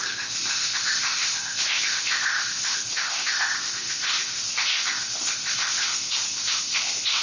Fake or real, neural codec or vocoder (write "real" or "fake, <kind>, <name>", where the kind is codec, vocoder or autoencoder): fake, codec, ZipCodec